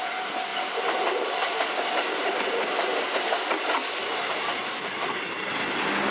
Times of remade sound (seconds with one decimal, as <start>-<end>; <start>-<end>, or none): none